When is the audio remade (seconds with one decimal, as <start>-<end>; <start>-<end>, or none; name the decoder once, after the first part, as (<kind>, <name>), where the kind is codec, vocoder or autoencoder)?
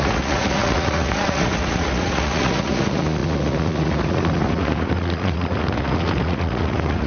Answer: 0.0-7.1 (vocoder, Vocos)